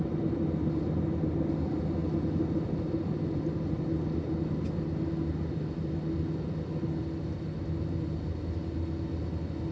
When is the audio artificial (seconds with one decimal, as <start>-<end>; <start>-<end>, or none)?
none